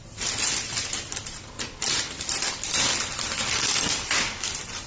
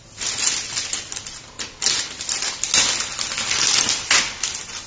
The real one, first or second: second